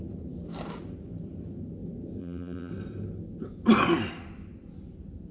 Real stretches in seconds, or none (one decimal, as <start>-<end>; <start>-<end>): 0.0-2.2; 2.7-5.3